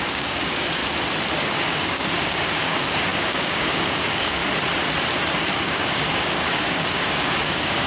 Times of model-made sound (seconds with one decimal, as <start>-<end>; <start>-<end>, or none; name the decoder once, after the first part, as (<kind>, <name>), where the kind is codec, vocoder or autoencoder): 0.0-0.8 (codec, DAC); 1.4-4.4; 5.6-7.9